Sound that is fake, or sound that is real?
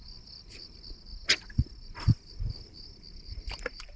real